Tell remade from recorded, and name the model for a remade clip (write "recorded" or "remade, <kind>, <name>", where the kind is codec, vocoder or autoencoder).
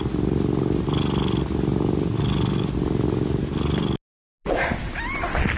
recorded